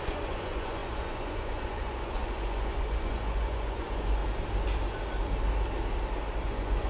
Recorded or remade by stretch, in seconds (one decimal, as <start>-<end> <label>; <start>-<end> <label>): 0.0-4.2 remade; 4.2-6.4 recorded; 6.4-6.9 remade

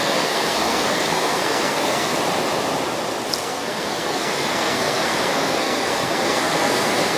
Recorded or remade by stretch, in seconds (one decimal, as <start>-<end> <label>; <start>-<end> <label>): 0.0-2.1 remade; 2.1-3.4 recorded; 3.4-7.2 remade

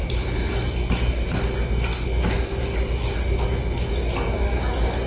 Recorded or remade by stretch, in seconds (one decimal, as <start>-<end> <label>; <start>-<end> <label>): 0.0-5.1 recorded